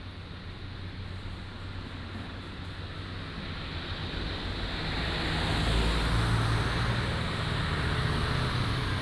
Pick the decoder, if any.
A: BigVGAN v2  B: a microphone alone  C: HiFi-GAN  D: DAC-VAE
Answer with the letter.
B